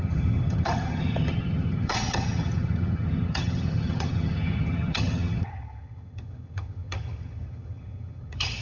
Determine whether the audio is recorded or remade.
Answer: remade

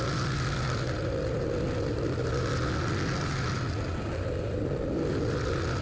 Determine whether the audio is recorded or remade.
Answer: recorded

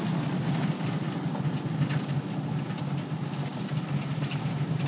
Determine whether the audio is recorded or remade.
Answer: recorded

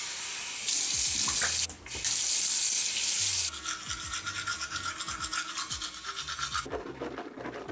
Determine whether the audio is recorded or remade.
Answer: recorded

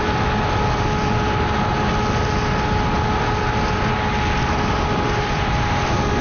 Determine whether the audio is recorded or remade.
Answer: recorded